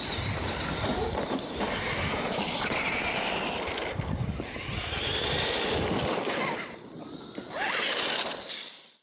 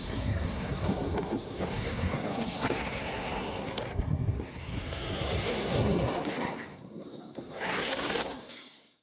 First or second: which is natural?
first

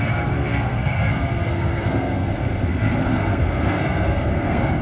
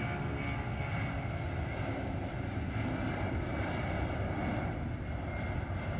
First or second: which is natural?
second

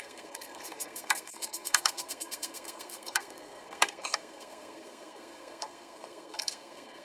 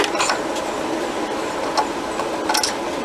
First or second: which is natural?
second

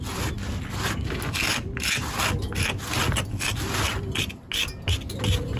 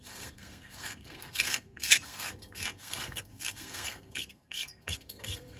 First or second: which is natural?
first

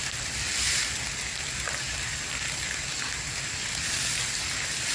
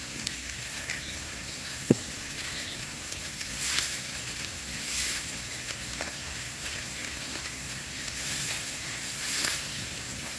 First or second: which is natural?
first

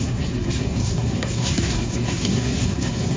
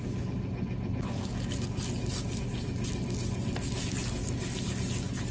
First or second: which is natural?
second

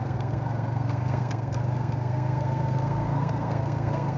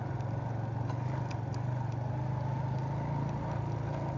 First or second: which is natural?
second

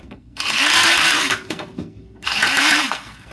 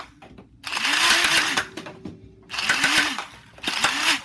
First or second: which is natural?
second